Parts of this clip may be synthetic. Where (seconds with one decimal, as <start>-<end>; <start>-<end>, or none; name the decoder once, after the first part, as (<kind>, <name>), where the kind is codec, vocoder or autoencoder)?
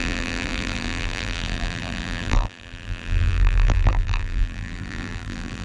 0.0-5.6 (vocoder, BigVGAN v2)